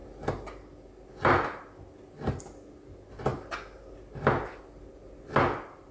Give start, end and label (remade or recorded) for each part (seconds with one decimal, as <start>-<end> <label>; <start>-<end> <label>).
0.0-5.9 recorded